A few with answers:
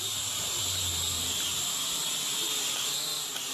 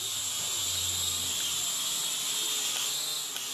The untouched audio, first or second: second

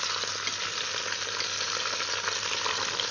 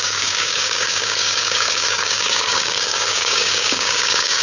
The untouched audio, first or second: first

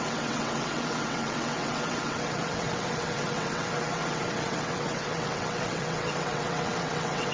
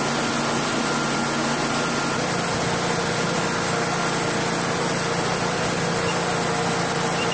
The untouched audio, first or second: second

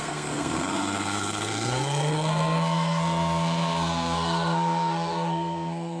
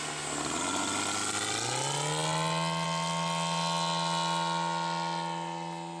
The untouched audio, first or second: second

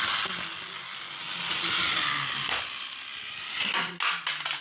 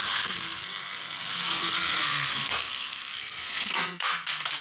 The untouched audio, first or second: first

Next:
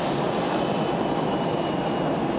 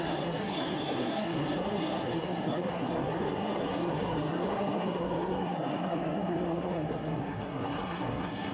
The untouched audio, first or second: first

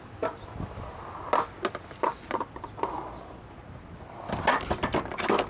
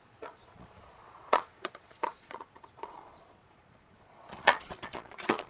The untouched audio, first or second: first